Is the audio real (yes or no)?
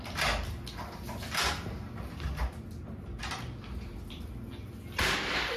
yes